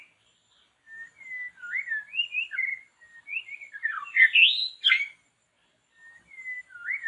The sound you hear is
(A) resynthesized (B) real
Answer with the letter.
B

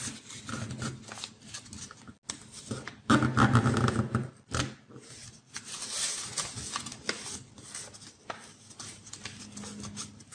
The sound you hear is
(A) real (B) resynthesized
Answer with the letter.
A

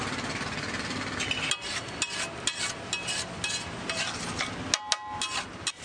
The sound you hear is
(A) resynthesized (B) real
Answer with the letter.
B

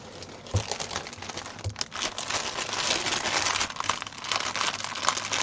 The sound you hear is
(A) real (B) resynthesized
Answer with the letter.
A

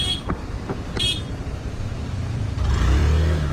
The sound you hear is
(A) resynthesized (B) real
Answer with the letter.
A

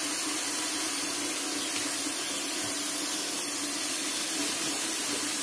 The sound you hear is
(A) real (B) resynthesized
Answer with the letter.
A